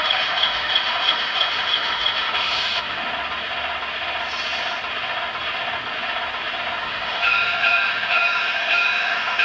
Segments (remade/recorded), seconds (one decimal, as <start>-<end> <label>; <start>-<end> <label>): 0.0-3.0 remade; 3.0-6.8 recorded; 6.8-9.4 remade